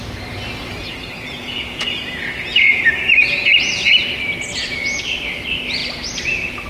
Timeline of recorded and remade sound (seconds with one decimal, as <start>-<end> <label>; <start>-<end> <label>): 0.0-0.8 recorded; 0.8-2.8 remade; 2.8-6.7 recorded